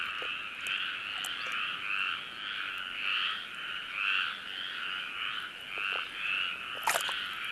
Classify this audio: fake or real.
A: real